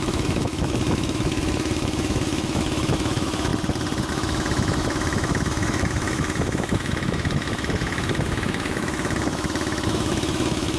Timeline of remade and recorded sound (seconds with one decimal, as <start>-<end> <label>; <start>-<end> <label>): 0.0-3.5 remade; 3.5-4.1 recorded; 4.1-10.8 remade